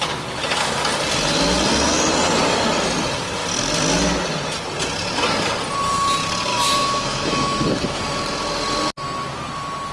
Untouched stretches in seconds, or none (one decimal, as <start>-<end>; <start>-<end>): 0.0-6.5; 8.0-9.9

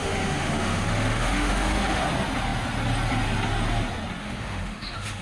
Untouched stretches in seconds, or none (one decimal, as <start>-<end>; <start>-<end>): 2.0-4.2

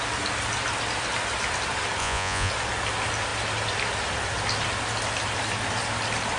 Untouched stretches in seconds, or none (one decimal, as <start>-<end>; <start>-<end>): 0.0-2.0; 2.5-6.4

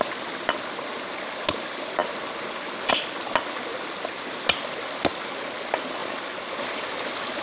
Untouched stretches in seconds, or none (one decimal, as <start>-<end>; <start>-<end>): 0.0-7.4

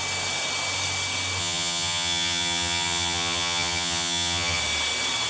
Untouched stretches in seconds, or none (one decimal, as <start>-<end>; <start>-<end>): 0.0-1.4; 4.6-5.3